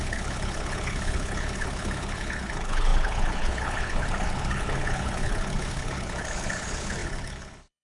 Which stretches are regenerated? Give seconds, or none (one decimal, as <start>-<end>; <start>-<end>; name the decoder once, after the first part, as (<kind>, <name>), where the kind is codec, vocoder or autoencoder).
0.0-7.8 (codec, HILCodec)